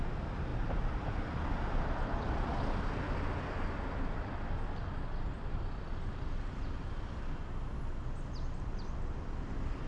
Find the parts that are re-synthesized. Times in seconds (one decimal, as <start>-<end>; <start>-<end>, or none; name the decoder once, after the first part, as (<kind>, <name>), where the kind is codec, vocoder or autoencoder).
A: none